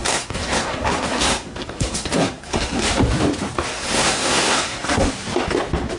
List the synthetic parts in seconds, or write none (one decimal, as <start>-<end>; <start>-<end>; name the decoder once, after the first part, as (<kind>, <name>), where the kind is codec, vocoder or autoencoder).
0.0-2.9 (codec, SNAC); 3.7-5.1